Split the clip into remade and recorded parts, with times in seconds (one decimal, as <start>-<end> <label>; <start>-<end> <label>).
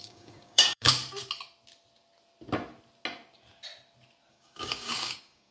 0.0-1.0 remade; 1.0-4.3 recorded; 4.3-5.5 remade